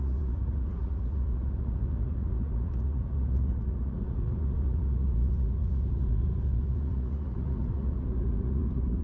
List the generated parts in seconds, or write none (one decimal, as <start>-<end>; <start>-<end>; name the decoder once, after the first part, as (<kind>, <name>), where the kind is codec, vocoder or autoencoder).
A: 0.0-9.0 (vocoder, Vocos)